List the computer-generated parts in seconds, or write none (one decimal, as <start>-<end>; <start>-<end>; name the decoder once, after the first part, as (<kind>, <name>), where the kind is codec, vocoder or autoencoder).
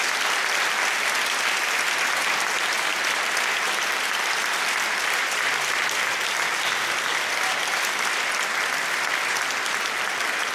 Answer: 2.9-6.7 (vocoder, BigVGAN v2)